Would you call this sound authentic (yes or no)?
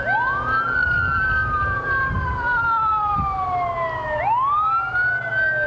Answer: yes